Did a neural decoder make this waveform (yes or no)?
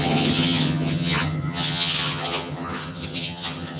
yes